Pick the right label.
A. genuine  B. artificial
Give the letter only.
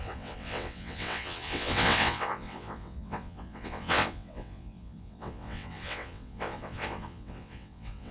B